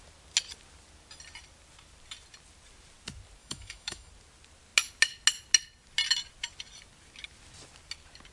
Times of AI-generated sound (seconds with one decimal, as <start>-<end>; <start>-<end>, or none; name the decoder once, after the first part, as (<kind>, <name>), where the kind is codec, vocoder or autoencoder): 3.4-4.1 (autoencoder, DAC-VAE)

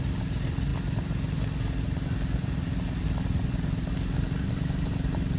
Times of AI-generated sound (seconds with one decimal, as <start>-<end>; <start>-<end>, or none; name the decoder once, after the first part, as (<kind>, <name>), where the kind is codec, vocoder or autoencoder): none

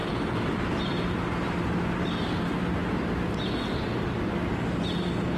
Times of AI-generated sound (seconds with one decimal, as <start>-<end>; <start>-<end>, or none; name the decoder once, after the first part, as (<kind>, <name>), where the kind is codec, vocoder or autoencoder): none

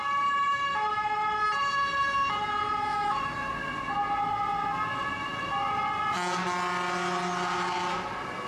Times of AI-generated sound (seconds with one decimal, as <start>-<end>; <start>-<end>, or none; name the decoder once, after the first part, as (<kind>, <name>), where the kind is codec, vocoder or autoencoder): 2.9-3.5 (autoencoder, DAC-VAE)

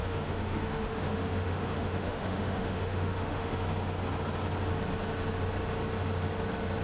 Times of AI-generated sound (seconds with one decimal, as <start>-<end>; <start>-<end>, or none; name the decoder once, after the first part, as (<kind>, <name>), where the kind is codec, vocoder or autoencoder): 0.0-3.5 (autoencoder, DAC-VAE)

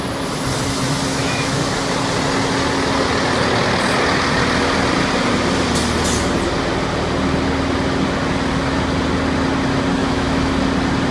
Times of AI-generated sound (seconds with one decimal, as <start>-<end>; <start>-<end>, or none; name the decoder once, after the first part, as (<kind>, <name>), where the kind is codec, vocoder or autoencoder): 1.1-1.6 (autoencoder, DAC-VAE); 10.0-10.5

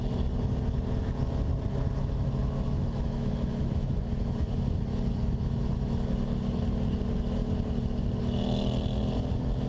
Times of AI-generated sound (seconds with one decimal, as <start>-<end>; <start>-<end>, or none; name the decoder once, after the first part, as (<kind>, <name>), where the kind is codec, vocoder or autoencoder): 2.0-6.1 (autoencoder, DAC-VAE)

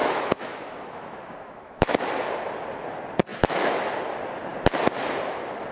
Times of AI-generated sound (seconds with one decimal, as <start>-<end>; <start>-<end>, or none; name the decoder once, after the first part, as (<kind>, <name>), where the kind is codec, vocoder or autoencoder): 0.0-2.0 (autoencoder, DAC-VAE); 3.3-3.9